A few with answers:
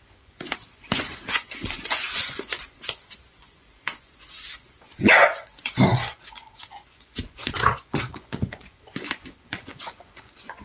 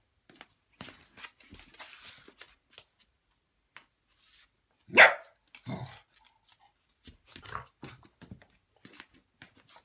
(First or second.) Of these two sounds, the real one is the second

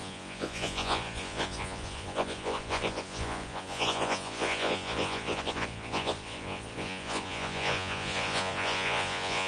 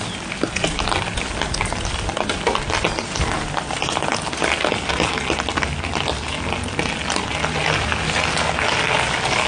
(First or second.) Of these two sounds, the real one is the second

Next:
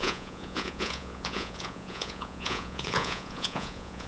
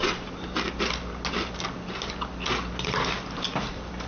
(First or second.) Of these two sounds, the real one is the second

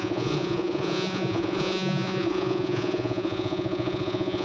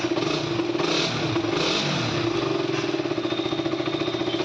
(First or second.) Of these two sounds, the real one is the second